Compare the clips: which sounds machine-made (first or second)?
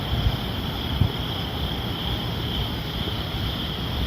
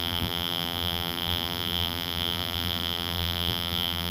second